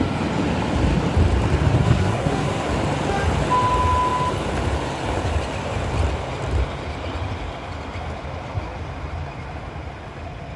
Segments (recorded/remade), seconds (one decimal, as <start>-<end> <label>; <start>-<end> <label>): 0.0-1.8 recorded; 1.8-2.7 remade; 2.7-10.6 recorded